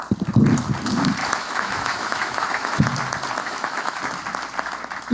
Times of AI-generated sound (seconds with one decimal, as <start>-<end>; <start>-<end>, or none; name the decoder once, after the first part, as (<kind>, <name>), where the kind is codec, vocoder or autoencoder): 1.2-2.8 (autoencoder, DAC-VAE); 3.4-4.0